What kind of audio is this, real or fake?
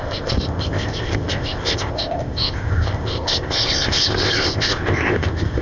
fake